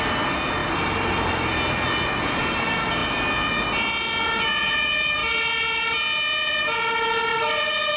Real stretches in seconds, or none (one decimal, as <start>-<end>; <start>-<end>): 0.0-0.6; 1.5-8.0